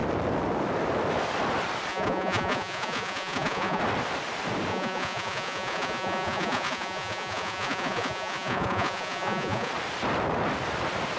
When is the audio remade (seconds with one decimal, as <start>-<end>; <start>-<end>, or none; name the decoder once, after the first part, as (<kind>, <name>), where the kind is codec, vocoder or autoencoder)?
1.9-3.8 (vocoder, Vocos); 4.7-9.7